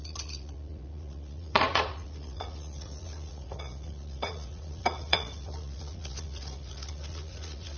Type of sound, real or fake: fake